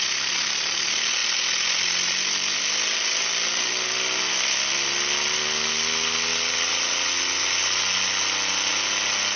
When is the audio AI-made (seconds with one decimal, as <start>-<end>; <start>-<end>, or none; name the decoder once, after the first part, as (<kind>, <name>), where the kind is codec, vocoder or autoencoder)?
none